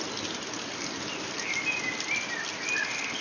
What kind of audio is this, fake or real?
real